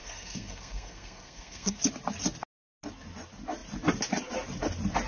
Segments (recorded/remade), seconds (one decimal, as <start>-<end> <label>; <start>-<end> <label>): 0.0-1.8 remade; 1.8-5.1 recorded